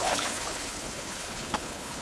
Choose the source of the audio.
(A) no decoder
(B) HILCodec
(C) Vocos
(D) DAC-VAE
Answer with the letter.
B